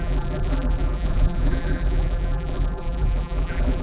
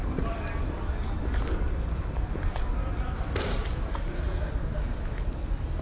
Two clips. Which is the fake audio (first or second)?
first